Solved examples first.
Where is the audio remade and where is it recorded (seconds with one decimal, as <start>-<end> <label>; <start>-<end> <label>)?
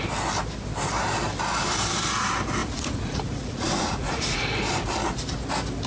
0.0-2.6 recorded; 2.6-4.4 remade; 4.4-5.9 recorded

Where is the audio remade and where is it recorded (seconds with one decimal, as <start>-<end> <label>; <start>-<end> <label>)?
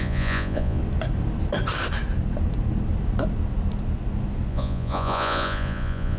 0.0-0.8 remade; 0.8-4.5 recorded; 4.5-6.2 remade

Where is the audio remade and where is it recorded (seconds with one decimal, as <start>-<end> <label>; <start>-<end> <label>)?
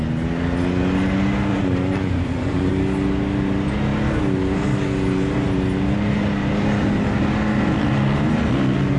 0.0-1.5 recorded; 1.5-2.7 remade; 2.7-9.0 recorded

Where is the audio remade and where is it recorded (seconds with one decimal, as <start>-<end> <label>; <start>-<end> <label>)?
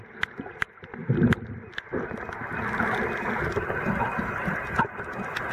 0.0-5.5 recorded